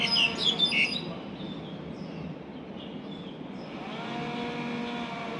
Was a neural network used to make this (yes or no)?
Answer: no